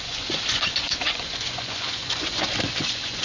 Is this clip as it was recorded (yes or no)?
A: no